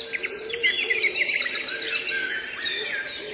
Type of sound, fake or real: real